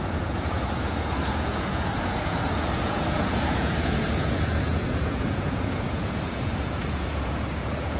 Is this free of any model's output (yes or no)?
no